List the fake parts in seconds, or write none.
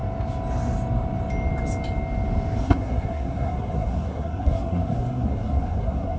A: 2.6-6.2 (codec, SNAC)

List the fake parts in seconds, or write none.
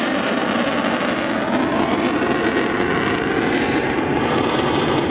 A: 0.0-0.4 (vocoder, BigVGAN v2); 3.5-5.1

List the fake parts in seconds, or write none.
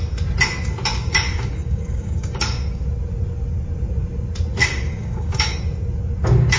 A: 1.0-2.8 (codec, DAC); 4.6-5.6